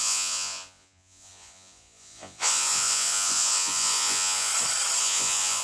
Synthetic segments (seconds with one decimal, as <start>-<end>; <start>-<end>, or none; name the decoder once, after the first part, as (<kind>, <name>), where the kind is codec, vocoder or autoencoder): 0.0-4.5 (vocoder, Vocos); 5.0-5.6